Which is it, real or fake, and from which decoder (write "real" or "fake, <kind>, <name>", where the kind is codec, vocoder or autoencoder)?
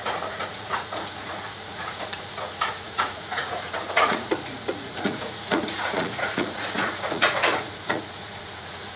fake, vocoder, Vocos